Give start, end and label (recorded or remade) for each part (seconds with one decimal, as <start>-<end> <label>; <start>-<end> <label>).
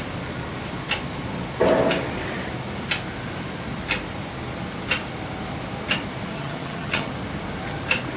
0.0-6.3 recorded; 6.3-7.1 remade; 7.1-8.2 recorded